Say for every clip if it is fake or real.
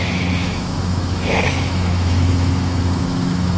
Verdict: fake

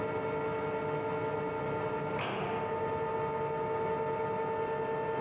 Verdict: real